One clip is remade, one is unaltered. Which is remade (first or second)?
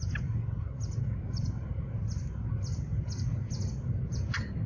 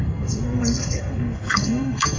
second